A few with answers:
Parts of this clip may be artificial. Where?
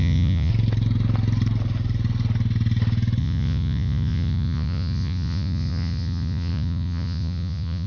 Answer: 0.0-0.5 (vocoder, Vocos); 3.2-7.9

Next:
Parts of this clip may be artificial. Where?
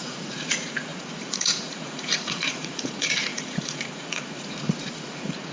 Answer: 0.0-5.5 (vocoder, Vocos)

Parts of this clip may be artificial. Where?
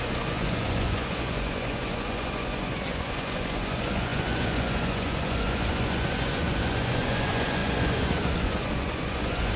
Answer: 0.0-9.6 (vocoder, Vocos)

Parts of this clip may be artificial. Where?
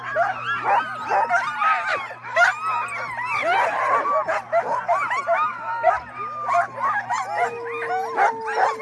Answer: none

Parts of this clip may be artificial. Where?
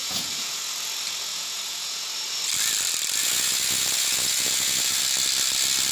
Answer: 0.0-0.6 (vocoder, Vocos); 1.3-2.1; 3.2-5.0